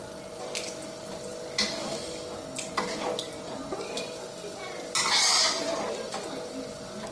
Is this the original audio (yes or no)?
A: yes